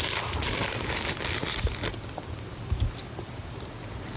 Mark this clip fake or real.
real